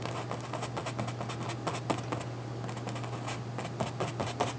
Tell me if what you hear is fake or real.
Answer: real